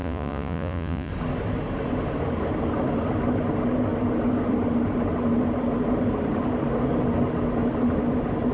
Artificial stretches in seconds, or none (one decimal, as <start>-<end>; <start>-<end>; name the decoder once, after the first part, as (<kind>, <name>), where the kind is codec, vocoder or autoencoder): 0.0-1.1 (vocoder, Vocos)